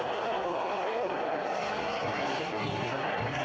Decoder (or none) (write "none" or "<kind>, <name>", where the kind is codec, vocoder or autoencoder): codec, SNAC